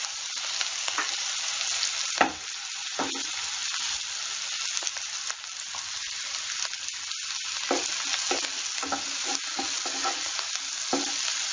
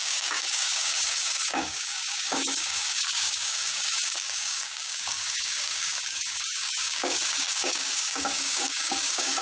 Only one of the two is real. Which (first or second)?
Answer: first